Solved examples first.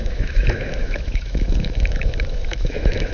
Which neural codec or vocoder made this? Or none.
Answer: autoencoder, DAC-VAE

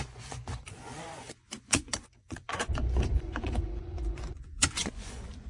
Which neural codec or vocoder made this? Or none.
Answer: vocoder, Vocos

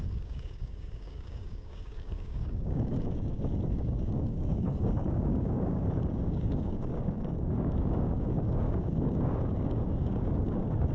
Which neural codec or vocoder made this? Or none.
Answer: codec, DAC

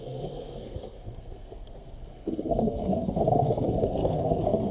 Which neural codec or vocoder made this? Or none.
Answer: codec, SNAC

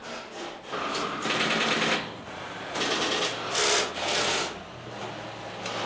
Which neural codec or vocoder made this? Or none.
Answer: none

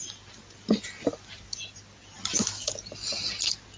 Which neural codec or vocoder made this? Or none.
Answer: none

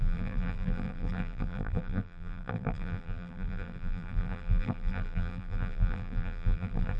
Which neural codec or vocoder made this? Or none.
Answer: vocoder, BigVGAN v2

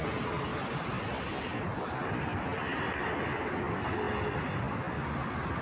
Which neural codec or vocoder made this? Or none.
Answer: none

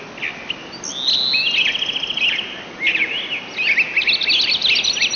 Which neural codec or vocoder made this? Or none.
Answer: none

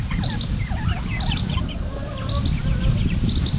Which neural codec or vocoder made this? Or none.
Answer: vocoder, BigVGAN v2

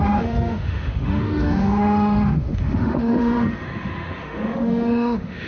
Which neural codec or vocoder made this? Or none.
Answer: autoencoder, DAC-VAE